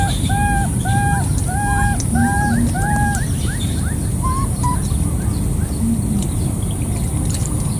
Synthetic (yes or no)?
no